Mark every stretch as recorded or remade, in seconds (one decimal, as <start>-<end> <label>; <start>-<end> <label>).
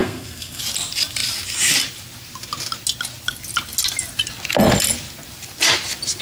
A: 0.0-0.6 remade; 0.6-6.2 recorded